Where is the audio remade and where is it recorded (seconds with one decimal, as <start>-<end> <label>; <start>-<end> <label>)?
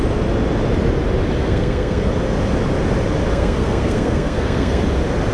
0.0-1.4 recorded; 1.4-2.1 remade; 2.1-3.3 recorded; 3.3-4.8 remade; 4.8-5.3 recorded